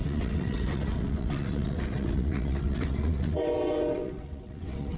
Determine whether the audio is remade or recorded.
remade